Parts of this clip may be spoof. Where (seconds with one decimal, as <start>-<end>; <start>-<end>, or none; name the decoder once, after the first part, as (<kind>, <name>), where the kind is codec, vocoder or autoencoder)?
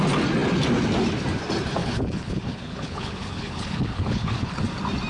1.8-4.6 (codec, HILCodec)